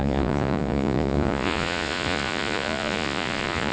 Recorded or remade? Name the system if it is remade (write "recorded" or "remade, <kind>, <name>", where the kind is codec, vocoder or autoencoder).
remade, vocoder, Vocos